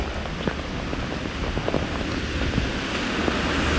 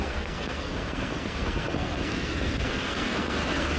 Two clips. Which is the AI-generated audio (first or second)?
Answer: second